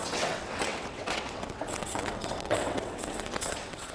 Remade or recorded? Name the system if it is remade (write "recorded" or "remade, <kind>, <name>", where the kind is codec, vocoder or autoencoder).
remade, vocoder, WaveNeXt